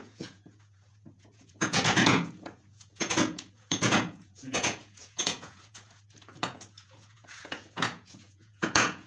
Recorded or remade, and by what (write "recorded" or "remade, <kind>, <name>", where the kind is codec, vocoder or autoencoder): remade, vocoder, Vocos